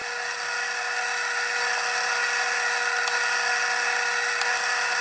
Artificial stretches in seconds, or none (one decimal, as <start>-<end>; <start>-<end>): none